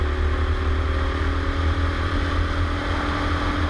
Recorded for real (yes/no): yes